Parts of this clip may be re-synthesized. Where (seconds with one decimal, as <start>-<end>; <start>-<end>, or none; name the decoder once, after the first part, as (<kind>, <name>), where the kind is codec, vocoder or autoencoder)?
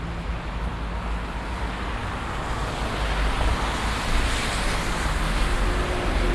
none